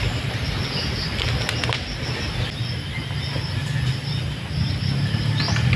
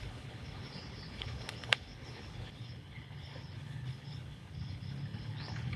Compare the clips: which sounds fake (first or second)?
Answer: second